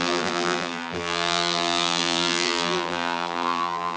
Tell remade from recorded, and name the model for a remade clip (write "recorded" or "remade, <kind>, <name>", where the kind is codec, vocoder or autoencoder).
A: remade, vocoder, BigVGAN v2